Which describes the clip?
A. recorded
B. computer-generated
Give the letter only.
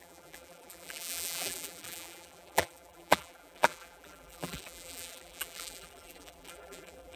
B